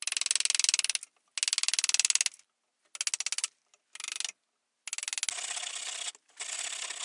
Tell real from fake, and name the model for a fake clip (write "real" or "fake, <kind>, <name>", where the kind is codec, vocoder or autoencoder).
real